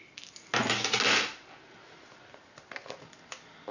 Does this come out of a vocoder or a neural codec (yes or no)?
no